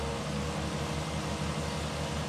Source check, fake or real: real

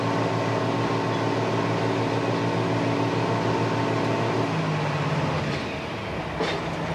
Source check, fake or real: real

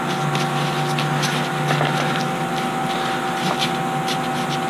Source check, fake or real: real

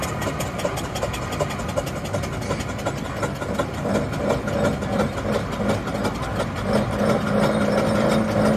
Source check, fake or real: real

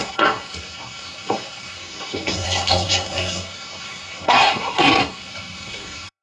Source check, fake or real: fake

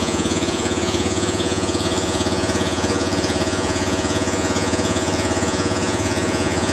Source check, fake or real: fake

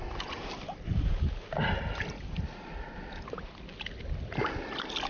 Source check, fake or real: real